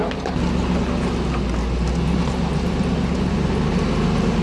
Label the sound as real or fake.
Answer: real